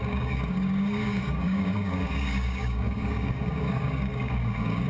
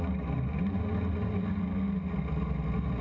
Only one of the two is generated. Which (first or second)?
first